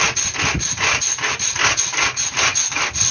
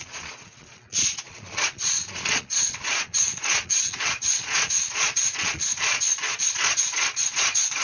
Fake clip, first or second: second